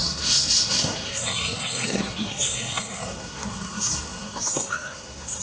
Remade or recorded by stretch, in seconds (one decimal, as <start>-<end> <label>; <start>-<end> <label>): 0.0-5.4 remade